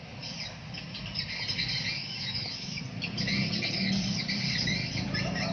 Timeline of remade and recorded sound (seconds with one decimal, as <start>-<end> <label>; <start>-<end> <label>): 0.0-2.0 recorded; 2.0-2.8 remade; 2.8-5.5 recorded